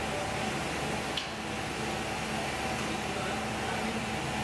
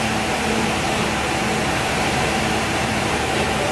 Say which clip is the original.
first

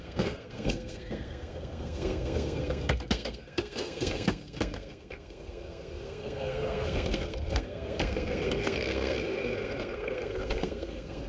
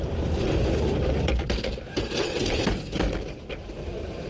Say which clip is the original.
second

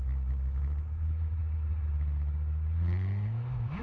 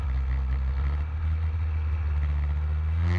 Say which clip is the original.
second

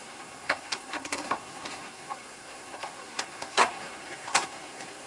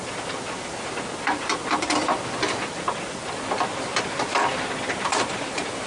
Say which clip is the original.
second